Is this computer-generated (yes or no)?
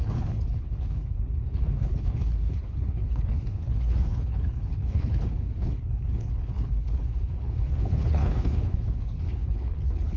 yes